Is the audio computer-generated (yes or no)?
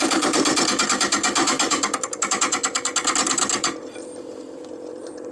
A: yes